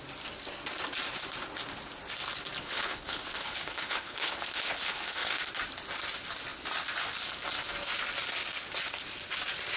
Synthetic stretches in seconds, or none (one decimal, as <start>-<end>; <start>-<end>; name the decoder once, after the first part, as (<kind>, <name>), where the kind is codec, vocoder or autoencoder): 2.6-5.4 (codec, HILCodec)